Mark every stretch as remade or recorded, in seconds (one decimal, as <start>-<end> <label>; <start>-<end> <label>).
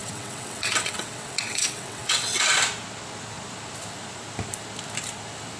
0.0-2.5 remade; 2.5-5.6 recorded